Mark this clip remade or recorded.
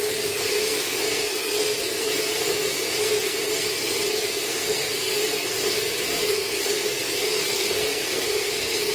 remade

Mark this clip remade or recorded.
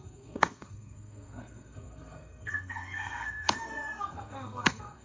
remade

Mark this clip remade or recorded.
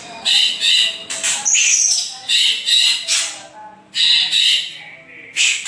recorded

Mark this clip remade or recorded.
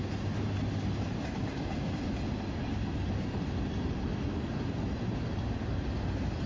recorded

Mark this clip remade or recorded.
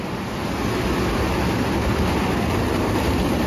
recorded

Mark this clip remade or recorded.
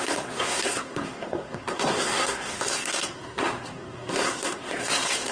remade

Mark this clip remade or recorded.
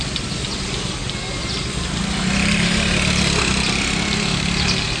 recorded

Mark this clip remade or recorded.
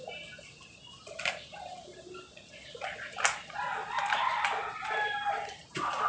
recorded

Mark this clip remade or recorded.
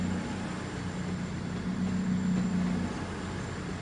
recorded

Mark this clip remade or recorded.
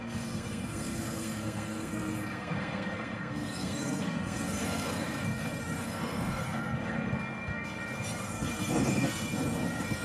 remade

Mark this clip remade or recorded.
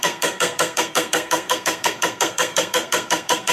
remade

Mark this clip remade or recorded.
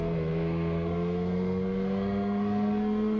remade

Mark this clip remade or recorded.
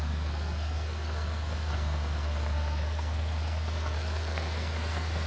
remade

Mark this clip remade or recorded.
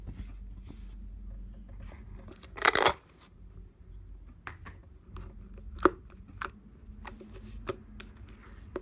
recorded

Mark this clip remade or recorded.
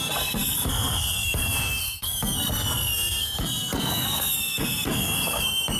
remade